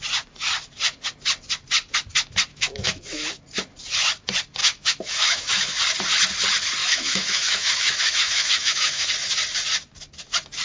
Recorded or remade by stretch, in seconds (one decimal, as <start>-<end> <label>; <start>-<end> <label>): 0.0-2.5 recorded; 2.5-3.4 remade; 3.4-4.6 recorded; 4.6-5.8 remade; 5.8-6.8 recorded; 6.8-9.1 remade; 9.1-10.6 recorded